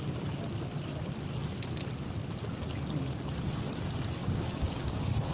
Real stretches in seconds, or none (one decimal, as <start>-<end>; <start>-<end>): 0.0-4.2